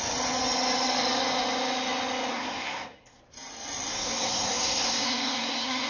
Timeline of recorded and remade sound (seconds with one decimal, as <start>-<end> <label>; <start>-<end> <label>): 0.0-2.3 recorded; 2.3-3.2 remade; 3.2-3.9 recorded; 3.9-5.9 remade